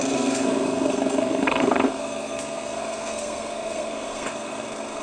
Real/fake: fake